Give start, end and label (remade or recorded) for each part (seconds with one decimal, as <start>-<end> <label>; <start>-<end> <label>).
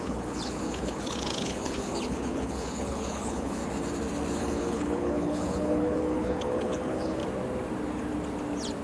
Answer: 0.0-3.6 remade; 3.6-4.4 recorded; 4.4-7.2 remade; 7.2-8.8 recorded